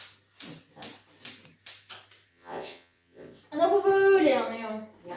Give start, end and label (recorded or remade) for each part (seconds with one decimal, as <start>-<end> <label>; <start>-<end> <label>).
0.0-2.3 recorded; 2.3-3.4 remade; 3.4-5.2 recorded